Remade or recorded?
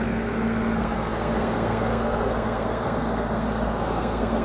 remade